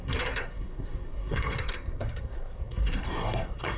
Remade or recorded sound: remade